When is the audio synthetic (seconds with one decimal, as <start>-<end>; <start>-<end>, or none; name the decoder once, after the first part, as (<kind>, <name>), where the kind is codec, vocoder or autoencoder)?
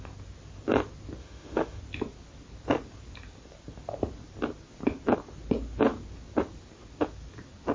1.2-1.8 (autoencoder, DAC-VAE)